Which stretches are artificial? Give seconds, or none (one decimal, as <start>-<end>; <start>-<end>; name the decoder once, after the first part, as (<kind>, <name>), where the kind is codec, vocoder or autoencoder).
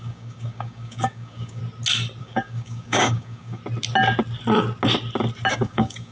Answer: 0.0-1.6 (codec, DAC); 2.2-3.6; 5.5-6.1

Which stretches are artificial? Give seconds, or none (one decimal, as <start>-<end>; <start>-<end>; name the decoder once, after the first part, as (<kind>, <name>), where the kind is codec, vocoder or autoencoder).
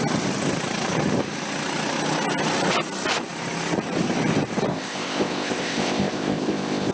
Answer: 4.7-6.9 (codec, ZipCodec)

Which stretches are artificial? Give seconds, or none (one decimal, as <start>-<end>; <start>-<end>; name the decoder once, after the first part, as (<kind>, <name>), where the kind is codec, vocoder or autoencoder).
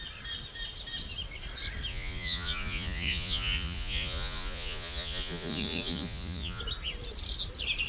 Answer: 1.9-6.6 (vocoder, Vocos)